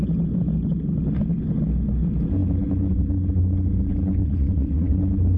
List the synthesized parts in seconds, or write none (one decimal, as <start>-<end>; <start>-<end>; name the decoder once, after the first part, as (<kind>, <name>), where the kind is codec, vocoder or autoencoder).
4.2-5.0 (vocoder, Vocos)

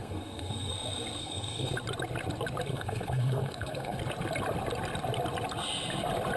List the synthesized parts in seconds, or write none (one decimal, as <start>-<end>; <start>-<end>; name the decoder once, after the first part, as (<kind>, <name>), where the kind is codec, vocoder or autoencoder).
0.0-0.7 (codec, SNAC); 1.2-1.7; 2.7-4.0

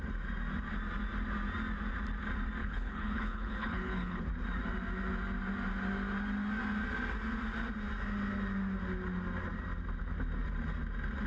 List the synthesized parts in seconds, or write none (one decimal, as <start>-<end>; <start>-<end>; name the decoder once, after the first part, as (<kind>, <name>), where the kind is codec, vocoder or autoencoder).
2.6-4.3 (codec, HILCodec)

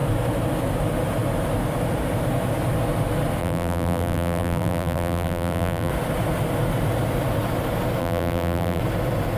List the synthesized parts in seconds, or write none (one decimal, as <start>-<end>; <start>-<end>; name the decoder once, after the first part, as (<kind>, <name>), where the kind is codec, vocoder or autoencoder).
3.4-5.9 (vocoder, BigVGAN v2); 8.0-8.8

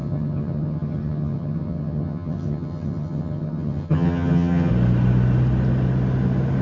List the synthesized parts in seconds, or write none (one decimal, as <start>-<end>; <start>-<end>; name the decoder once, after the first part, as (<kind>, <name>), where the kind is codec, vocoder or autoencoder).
0.0-4.7 (vocoder, HiFi-GAN)

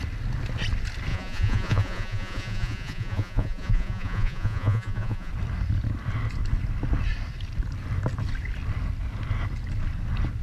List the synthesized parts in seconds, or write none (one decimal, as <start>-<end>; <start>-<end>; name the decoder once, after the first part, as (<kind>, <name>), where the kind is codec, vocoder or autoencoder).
1.1-5.3 (vocoder, Vocos)

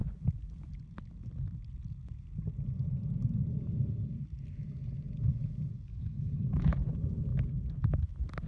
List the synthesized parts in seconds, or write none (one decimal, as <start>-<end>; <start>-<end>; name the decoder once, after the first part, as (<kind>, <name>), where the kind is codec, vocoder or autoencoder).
5.9-6.5 (codec, HILCodec)